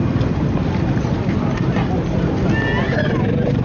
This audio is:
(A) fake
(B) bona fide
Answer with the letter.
B